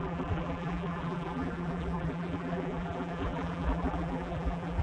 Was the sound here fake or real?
fake